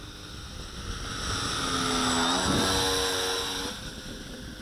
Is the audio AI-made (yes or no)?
no